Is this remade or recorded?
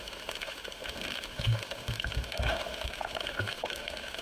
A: remade